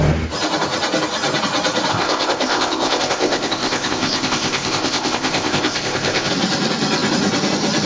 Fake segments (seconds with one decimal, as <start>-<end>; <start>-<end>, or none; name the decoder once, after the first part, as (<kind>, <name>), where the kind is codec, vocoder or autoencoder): 1.9-6.3 (codec, ZipCodec)